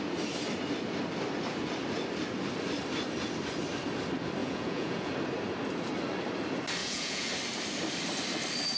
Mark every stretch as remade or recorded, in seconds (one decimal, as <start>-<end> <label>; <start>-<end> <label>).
0.0-4.4 recorded; 4.4-5.1 remade; 5.1-6.8 recorded; 6.8-7.3 remade; 7.3-8.8 recorded